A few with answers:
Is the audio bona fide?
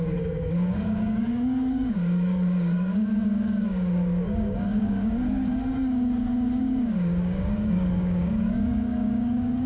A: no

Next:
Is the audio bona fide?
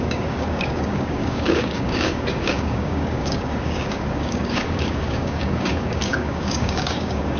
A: no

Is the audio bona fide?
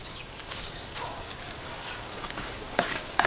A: no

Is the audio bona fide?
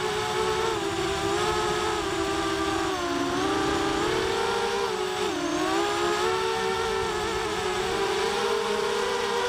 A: yes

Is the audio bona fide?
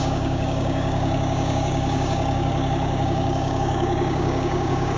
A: no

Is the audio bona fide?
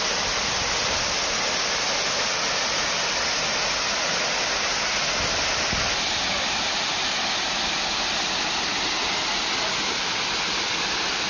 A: yes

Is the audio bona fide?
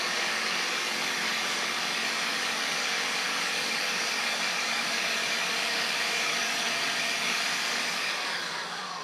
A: no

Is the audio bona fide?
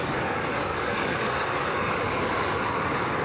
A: no